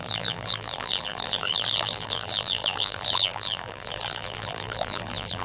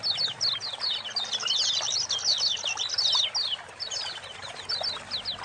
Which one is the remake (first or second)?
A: first